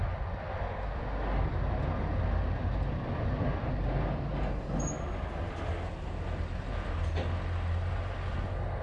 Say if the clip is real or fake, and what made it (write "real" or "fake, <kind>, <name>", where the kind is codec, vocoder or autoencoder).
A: real